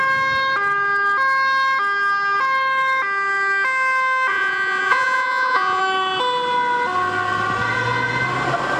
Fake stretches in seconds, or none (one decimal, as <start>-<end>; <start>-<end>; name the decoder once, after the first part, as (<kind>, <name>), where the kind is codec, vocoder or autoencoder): 4.3-5.8 (vocoder, Vocos)